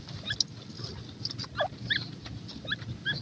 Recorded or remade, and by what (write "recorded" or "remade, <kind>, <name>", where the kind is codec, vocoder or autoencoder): recorded